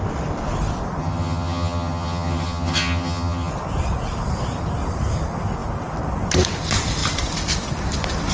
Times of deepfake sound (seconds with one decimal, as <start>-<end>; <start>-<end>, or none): 1.0-3.5